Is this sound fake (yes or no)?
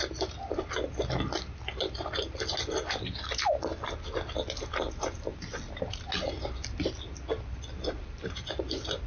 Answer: no